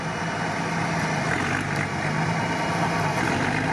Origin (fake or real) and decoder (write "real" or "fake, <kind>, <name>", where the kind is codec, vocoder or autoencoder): real